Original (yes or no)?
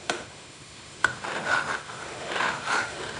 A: no